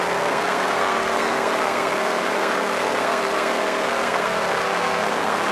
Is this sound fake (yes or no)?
yes